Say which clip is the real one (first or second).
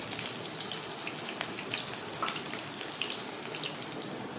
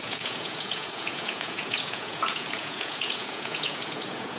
first